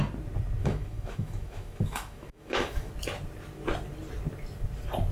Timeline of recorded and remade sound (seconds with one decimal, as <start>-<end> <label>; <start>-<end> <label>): 0.0-0.6 recorded; 0.6-2.9 remade; 2.9-5.1 recorded